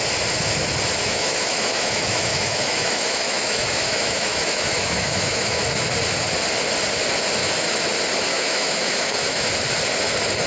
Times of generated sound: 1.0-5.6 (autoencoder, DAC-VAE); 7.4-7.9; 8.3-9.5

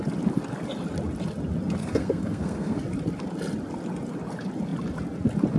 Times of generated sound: 1.8-2.8 (codec, SNAC)

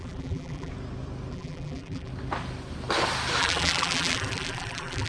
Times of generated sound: 0.0-0.7 (vocoder, BigVGAN v2); 1.3-2.1; 3.4-5.1

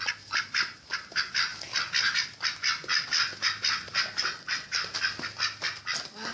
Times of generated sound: none

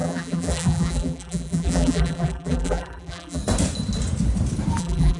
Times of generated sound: 0.0-3.4 (vocoder, BigVGAN v2); 4.8-5.2

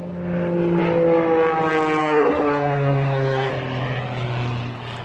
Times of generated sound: 2.0-3.5 (codec, SNAC)

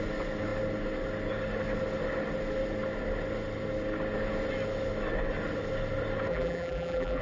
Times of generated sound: 6.3-7.2 (vocoder, BigVGAN v2)

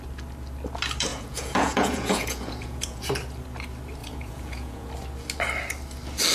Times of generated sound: 1.1-3.1 (vocoder, Vocos); 4.0-4.9